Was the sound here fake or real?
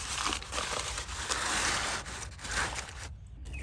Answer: real